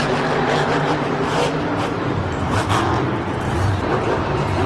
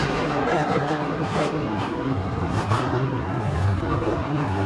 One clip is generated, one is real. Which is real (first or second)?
first